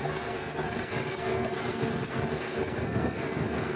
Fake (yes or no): yes